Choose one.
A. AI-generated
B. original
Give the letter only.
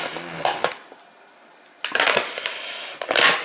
B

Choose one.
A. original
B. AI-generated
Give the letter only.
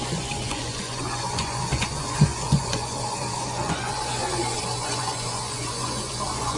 B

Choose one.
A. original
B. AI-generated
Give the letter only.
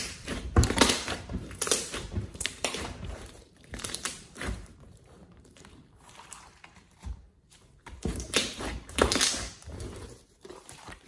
B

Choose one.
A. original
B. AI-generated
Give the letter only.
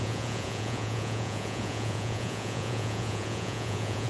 B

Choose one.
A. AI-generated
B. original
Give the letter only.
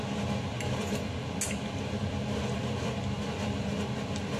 B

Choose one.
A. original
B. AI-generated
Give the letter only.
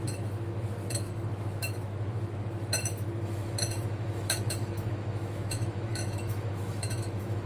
B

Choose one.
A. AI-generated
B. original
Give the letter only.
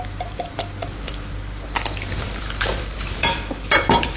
A